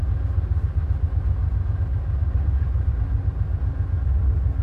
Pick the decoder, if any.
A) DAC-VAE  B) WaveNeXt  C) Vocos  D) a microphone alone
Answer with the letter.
D